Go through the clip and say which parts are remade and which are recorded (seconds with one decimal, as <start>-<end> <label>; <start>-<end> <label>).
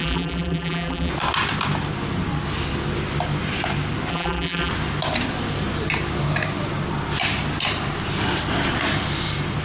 0.0-1.1 remade; 1.1-4.1 recorded; 4.1-4.7 remade; 4.7-9.6 recorded